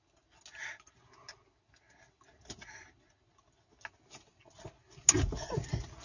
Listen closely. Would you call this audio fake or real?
real